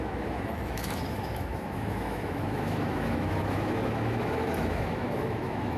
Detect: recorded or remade remade